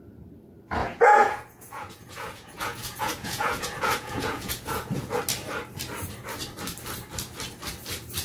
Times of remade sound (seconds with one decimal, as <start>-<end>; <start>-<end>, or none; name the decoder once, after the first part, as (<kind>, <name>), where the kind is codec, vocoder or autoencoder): 0.8-5.2 (vocoder, Vocos)